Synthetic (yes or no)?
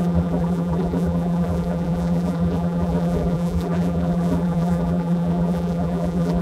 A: yes